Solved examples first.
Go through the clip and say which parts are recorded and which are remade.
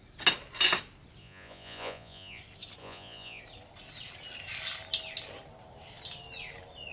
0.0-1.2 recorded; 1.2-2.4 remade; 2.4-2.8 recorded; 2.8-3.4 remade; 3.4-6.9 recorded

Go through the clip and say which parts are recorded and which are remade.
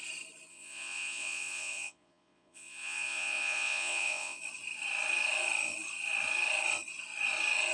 0.0-0.5 recorded; 0.5-4.4 remade; 4.4-7.7 recorded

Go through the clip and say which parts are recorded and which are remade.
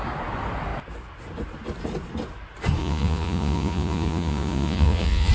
0.0-2.8 recorded; 2.8-5.3 remade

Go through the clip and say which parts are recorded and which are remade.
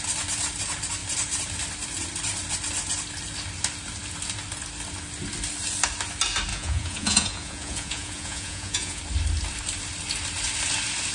0.0-6.5 recorded; 6.5-9.0 remade; 9.0-11.1 recorded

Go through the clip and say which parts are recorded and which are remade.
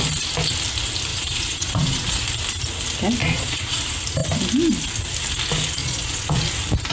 0.0-1.1 recorded; 1.1-2.2 remade; 2.2-3.2 recorded; 3.2-3.8 remade; 3.8-5.8 recorded; 5.8-6.4 remade; 6.4-6.9 recorded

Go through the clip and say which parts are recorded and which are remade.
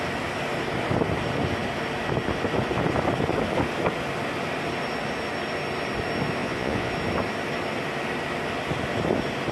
0.0-6.4 recorded; 6.4-6.9 remade; 6.9-9.5 recorded